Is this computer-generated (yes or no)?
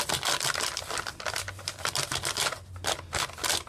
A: no